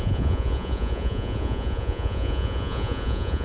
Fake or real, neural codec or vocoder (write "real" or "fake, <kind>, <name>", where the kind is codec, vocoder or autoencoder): fake, vocoder, Vocos